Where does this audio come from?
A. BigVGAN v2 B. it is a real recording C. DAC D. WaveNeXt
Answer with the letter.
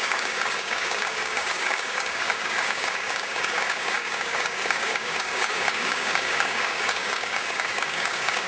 C